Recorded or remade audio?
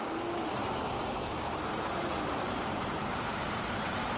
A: remade